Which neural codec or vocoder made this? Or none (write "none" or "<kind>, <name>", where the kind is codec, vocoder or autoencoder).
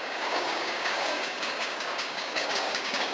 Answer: codec, DAC